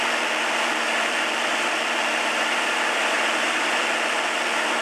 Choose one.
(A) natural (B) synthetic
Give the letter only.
B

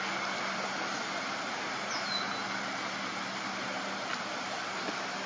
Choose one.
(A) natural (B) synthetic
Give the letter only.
A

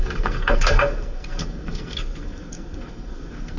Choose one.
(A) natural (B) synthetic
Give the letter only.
B